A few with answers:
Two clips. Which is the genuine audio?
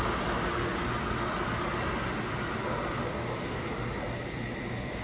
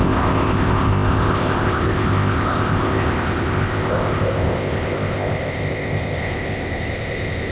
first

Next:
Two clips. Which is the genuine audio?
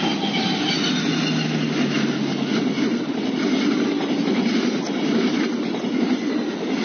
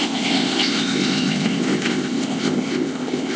first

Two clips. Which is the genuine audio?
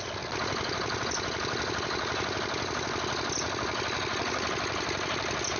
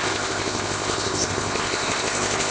first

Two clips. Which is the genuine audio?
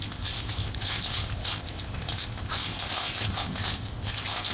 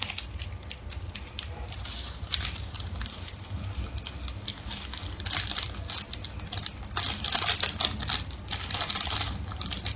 second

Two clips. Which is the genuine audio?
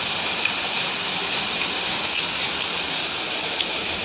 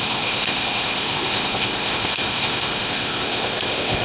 first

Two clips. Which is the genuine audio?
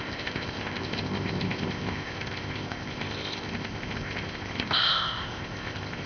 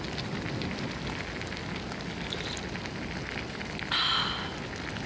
second